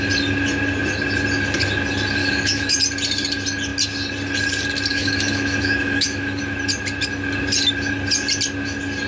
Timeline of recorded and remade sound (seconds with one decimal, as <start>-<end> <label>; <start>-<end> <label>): 0.0-2.2 recorded; 2.2-2.8 remade; 2.8-4.9 recorded; 4.9-6.4 remade; 6.4-9.1 recorded